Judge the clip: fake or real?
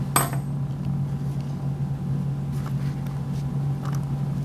real